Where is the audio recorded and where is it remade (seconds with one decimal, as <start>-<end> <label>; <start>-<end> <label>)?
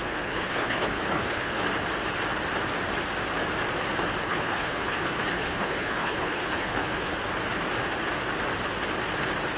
0.0-1.6 remade; 1.6-4.2 recorded; 4.2-7.1 remade; 7.1-9.6 recorded